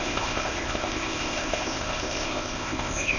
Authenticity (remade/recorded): remade